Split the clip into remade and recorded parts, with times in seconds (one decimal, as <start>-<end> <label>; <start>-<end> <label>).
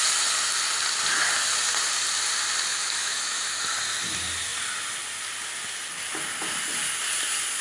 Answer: 0.0-2.7 recorded; 2.7-3.6 remade; 3.6-7.6 recorded